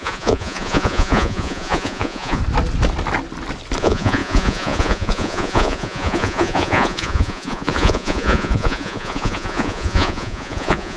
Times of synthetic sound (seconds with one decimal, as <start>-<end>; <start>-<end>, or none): 0.0-2.4; 3.8-11.0